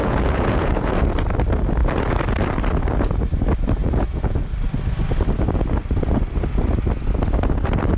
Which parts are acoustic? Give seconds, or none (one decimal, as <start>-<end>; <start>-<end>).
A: 0.9-3.8; 4.4-8.0